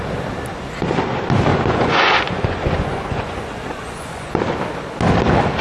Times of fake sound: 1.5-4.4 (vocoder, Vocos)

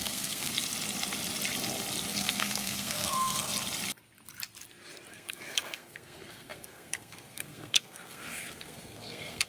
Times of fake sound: 0.0-0.5 (codec, SNAC); 2.1-3.5; 5.1-9.5

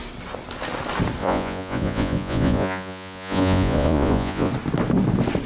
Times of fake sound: 1.2-4.5 (vocoder, Vocos)

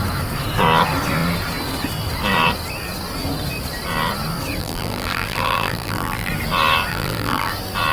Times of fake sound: 4.6-6.3 (vocoder, BigVGAN v2); 6.9-7.5

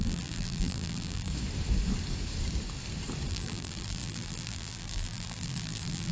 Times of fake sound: 0.0-1.3 (vocoder, BigVGAN v2); 3.3-6.1

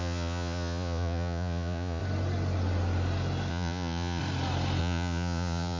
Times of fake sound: 0.0-2.0 (vocoder, Vocos); 3.5-4.2; 4.8-5.8

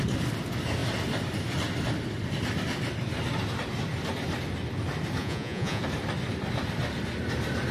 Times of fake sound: 5.2-5.8 (vocoder, Vocos)

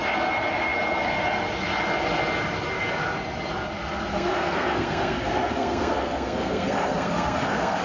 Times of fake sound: 4.1-7.8 (codec, SNAC)